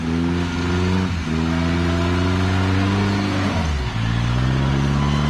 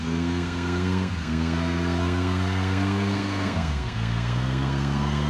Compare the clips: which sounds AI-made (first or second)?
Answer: second